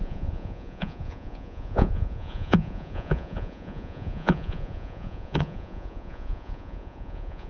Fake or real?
fake